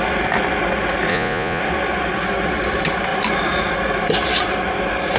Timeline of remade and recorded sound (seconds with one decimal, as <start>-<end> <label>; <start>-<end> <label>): 0.0-1.1 recorded; 1.1-1.6 remade; 1.6-5.2 recorded

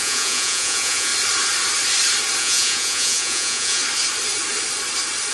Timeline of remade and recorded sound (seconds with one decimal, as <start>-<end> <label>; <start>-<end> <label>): 0.0-1.1 remade; 1.1-2.4 recorded; 2.4-3.8 remade; 3.8-5.3 recorded